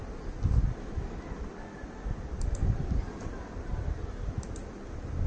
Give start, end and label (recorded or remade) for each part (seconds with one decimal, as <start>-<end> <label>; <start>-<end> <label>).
0.0-5.3 recorded